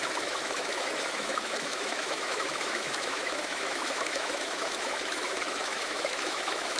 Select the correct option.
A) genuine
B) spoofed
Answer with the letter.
B